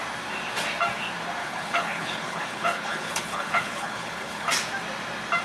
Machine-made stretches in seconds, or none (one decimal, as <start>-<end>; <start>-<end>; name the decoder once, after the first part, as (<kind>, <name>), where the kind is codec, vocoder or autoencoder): 1.4-4.5 (codec, HILCodec)